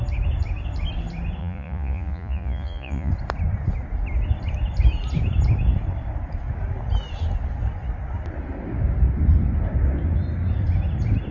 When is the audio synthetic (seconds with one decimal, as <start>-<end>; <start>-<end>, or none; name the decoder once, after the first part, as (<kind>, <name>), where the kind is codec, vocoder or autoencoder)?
1.4-3.1 (vocoder, Vocos)